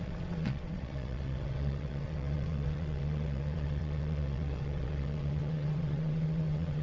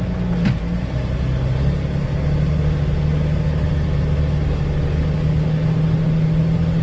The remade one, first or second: first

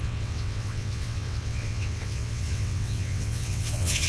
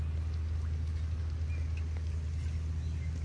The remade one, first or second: first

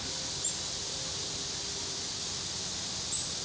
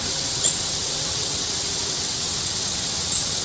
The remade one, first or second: second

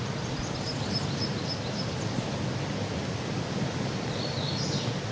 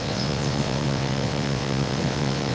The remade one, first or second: second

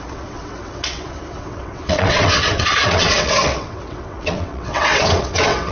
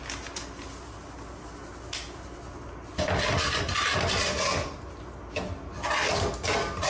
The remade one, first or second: first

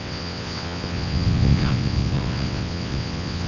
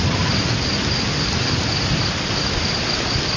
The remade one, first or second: first